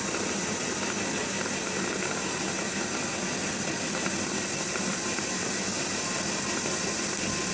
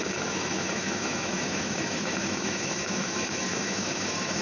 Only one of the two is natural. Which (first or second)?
first